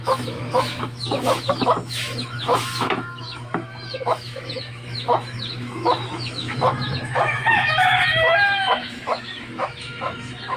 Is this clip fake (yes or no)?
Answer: yes